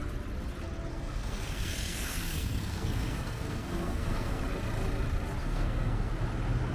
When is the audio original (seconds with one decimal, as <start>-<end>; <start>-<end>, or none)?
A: 0.0-0.9; 4.4-5.4; 6.1-6.7